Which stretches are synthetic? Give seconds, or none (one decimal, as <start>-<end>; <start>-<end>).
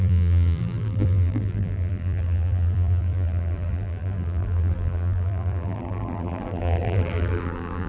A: 0.0-7.9